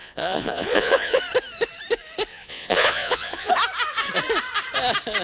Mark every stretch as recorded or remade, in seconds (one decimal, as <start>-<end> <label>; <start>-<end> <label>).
0.0-1.2 remade; 1.2-2.3 recorded; 2.3-3.5 remade; 3.5-5.2 recorded